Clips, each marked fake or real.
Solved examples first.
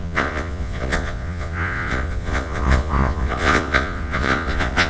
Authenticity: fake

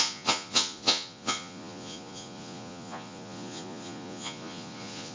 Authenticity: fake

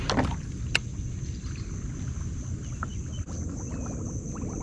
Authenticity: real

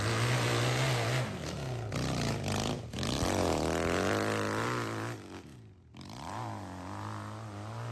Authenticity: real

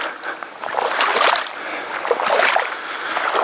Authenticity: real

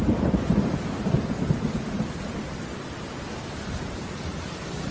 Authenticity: real